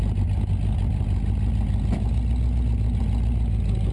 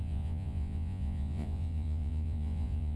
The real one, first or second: first